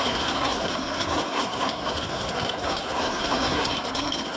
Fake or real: fake